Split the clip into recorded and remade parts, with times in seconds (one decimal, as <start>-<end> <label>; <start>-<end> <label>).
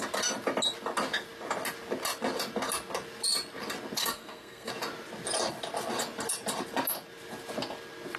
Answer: 0.0-4.0 recorded; 4.0-4.7 remade; 4.7-8.2 recorded